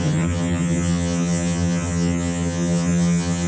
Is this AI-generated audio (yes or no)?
yes